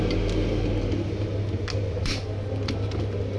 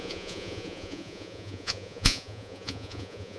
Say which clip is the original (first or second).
first